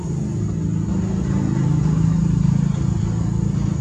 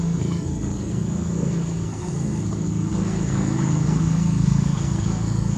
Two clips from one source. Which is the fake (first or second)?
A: second